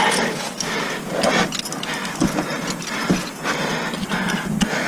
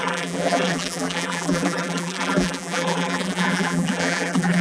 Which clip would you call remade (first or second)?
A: second